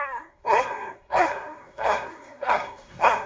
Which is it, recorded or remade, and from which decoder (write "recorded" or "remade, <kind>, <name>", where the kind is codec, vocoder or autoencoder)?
remade, codec, SNAC